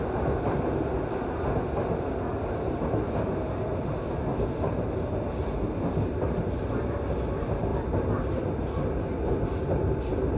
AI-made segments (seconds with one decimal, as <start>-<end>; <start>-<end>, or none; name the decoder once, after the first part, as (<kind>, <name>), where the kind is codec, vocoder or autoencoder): none